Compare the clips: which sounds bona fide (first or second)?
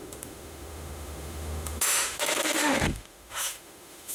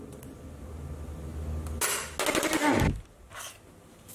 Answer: second